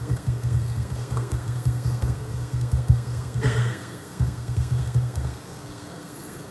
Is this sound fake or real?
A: fake